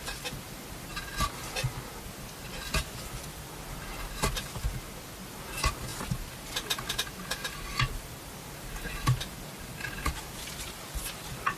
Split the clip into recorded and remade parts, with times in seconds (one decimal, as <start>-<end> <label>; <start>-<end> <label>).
0.0-11.6 recorded